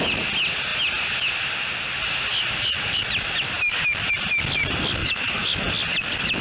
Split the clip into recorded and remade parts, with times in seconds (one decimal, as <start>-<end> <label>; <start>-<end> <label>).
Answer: 0.0-5.0 recorded; 5.0-5.7 remade; 5.7-6.4 recorded

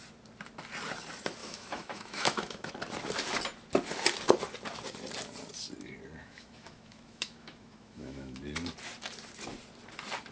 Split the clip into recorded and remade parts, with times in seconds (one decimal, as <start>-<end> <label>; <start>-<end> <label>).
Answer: 0.0-1.4 recorded; 1.4-2.7 remade; 2.7-6.2 recorded; 6.2-8.4 remade; 8.4-10.3 recorded

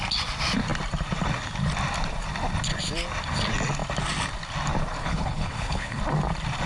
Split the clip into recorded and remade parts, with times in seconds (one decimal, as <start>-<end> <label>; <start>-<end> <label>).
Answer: 0.0-5.0 recorded; 5.0-6.0 remade; 6.0-6.7 recorded

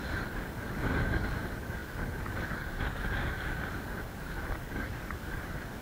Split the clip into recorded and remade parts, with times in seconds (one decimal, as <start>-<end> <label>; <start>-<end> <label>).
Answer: 0.0-5.8 remade

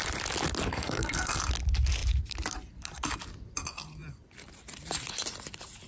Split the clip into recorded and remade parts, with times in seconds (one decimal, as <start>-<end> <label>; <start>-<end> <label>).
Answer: 0.0-0.7 recorded; 0.7-1.4 remade; 1.4-5.9 recorded

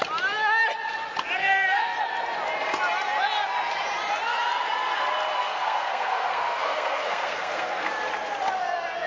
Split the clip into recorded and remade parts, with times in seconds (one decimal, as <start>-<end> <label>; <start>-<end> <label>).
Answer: 0.0-1.4 recorded; 1.4-2.0 remade; 2.0-5.4 recorded; 5.4-7.9 remade; 7.9-9.1 recorded

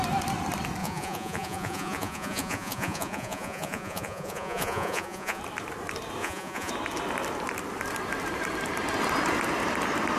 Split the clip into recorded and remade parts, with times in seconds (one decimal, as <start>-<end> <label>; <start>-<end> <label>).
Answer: 0.0-0.8 recorded; 0.8-5.4 remade; 5.4-6.2 recorded; 6.2-6.7 remade; 6.7-10.2 recorded

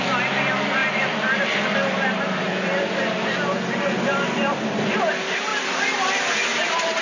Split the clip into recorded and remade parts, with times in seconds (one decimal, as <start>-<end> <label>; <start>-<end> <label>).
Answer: 0.0-7.0 remade